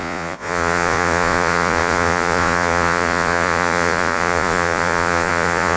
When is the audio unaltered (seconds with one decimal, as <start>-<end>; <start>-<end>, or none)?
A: none